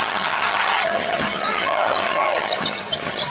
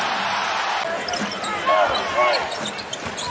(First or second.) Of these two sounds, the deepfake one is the first